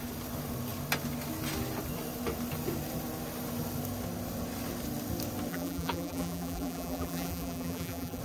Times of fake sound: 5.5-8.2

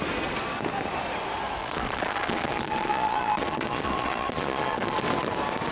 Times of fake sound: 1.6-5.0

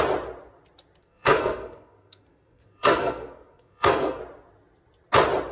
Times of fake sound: 1.0-4.2

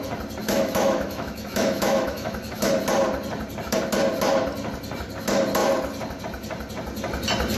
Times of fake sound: 0.4-2.7

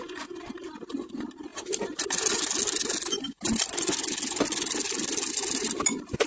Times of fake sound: none

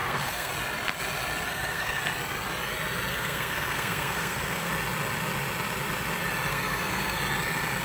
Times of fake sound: 0.0-0.5; 1.5-2.0; 3.1-4.7; 6.5-7.2

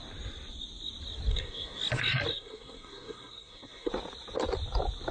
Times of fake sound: 1.3-1.8; 2.3-3.9